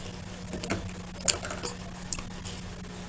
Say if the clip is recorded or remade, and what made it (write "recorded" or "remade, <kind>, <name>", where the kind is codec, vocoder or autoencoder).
recorded